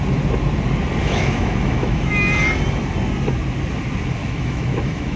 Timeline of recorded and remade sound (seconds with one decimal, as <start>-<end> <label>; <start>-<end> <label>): 0.0-1.0 recorded; 1.0-2.1 remade; 2.1-4.2 recorded; 4.2-5.2 remade